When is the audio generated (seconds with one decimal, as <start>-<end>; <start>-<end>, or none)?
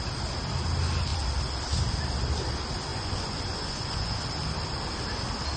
2.9-4.2